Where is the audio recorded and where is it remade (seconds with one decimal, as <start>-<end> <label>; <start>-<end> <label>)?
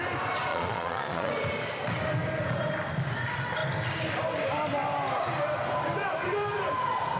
0.0-0.5 recorded; 0.5-1.3 remade; 1.3-7.2 recorded